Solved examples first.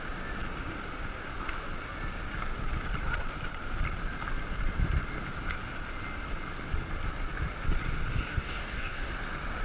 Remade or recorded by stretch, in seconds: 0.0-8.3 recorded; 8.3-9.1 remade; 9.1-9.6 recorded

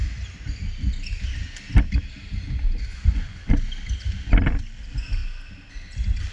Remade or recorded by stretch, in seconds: 0.0-2.9 recorded; 2.9-3.5 remade; 3.5-6.3 recorded

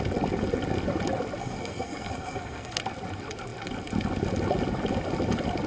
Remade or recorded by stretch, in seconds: 0.0-1.4 recorded; 1.4-2.8 remade; 2.8-5.7 recorded

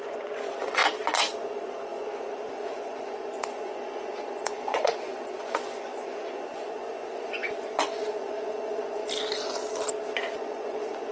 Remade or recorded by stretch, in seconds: 0.0-0.8 remade; 0.8-1.4 recorded; 1.4-9.0 remade; 9.0-10.2 recorded; 10.2-11.1 remade

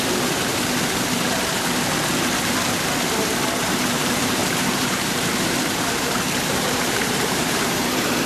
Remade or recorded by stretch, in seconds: 0.0-1.5 remade; 1.5-3.8 recorded; 3.8-8.3 remade

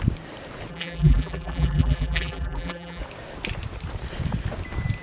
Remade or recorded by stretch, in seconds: 0.0-0.7 recorded; 0.7-3.0 remade; 3.0-5.0 recorded